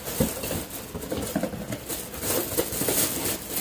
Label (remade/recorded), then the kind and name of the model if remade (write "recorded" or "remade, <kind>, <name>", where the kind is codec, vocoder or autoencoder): recorded